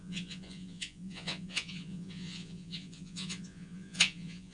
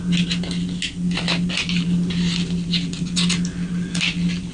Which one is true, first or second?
second